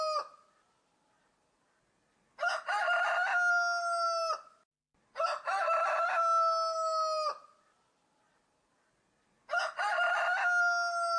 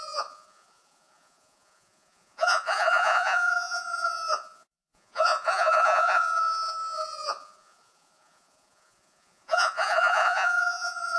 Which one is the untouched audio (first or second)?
first